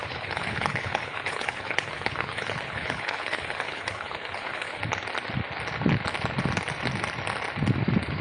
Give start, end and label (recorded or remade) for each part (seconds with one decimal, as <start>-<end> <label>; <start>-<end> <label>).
0.0-4.8 remade; 4.8-8.2 recorded